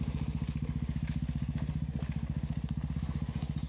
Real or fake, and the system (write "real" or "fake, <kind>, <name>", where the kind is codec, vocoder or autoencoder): real